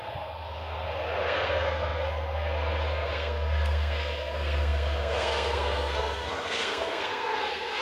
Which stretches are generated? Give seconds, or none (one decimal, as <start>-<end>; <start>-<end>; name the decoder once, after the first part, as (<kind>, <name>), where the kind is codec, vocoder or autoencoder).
0.0-7.8 (codec, SNAC)